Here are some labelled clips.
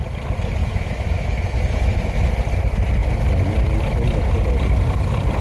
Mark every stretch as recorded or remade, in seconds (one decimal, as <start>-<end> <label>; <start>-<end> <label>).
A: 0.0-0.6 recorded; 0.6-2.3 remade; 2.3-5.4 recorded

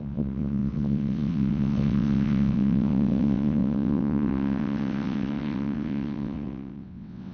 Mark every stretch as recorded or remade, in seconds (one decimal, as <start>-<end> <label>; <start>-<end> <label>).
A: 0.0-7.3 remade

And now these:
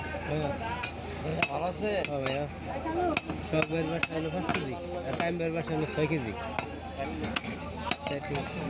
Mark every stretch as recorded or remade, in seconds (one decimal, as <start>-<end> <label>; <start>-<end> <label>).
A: 0.0-8.7 recorded